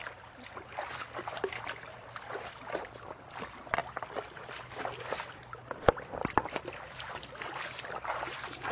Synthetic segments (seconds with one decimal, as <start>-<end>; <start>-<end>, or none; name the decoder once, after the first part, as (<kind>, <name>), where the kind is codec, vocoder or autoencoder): none